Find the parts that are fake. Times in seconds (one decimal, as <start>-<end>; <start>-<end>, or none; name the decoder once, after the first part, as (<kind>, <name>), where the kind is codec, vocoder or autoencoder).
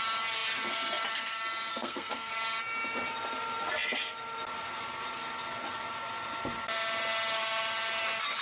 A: 1.7-2.3 (codec, SNAC)